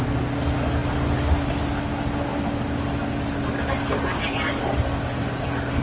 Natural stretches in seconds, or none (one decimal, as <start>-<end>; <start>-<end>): 0.0-5.8